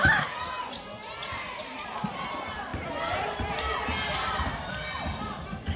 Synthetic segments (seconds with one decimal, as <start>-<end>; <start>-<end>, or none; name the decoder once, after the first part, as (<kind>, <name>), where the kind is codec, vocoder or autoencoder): none